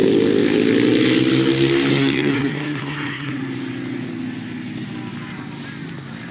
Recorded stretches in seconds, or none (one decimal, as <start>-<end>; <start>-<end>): 0.0-1.9; 3.4-6.3